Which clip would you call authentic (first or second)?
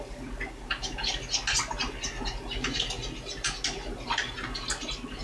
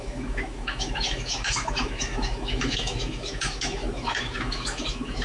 first